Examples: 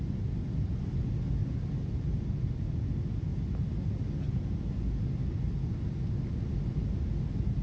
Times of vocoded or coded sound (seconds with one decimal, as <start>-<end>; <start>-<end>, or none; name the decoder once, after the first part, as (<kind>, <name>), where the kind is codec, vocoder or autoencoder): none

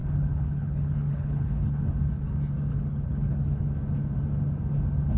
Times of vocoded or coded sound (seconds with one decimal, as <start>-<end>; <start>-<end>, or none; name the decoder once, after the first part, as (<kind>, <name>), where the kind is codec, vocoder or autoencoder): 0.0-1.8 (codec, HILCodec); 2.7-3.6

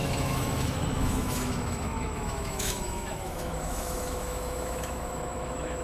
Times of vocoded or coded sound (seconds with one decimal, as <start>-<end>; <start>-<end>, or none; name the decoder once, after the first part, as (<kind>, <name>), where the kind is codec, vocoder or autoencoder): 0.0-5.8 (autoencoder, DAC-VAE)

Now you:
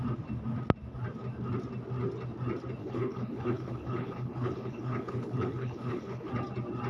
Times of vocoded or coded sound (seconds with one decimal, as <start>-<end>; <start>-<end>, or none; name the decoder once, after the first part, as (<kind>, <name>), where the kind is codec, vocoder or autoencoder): 2.8-6.3 (codec, HILCodec)

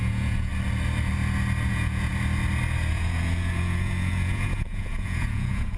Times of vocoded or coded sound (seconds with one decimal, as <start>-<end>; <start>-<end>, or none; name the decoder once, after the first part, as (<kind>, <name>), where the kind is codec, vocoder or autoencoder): 0.0-0.5 (vocoder, Vocos); 1.7-2.1; 2.9-5.8

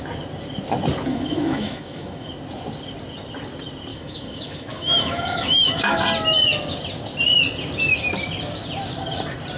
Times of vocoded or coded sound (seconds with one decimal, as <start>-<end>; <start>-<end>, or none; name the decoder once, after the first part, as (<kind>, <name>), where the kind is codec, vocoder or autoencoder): 1.1-2.3 (autoencoder, DAC-VAE); 3.9-6.0